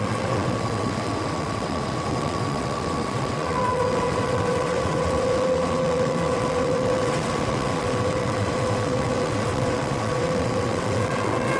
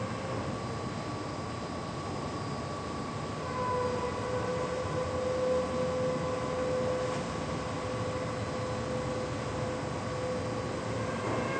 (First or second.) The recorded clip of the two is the second